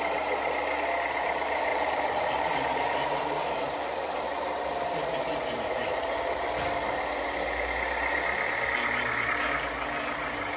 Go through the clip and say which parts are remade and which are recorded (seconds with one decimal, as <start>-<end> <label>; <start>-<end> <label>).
0.0-1.7 recorded; 1.7-6.6 remade; 6.6-10.6 recorded